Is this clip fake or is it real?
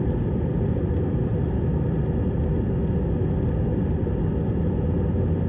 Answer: real